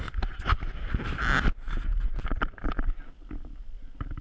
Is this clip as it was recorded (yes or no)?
yes